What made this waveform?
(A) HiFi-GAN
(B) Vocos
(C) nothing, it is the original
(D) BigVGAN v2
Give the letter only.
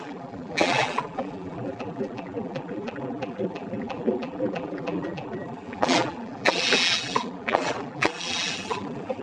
D